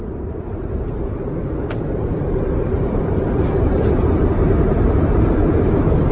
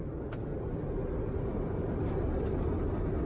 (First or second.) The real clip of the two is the second